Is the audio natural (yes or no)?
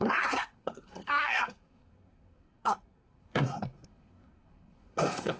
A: no